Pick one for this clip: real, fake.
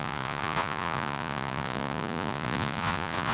fake